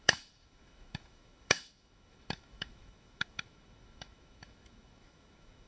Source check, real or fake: fake